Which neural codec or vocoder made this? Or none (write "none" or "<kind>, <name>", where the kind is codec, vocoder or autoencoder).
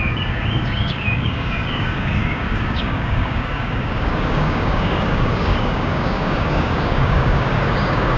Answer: codec, DAC